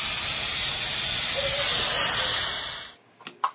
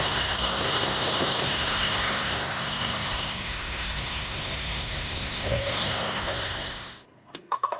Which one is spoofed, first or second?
second